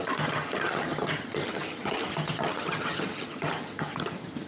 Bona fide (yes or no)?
no